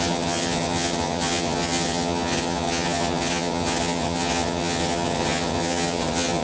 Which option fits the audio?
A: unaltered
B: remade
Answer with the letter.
B